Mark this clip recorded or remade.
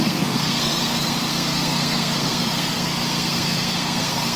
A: remade